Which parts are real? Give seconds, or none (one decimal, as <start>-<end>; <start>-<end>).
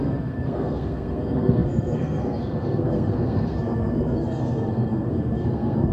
none